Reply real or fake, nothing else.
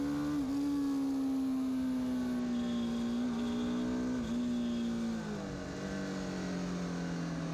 real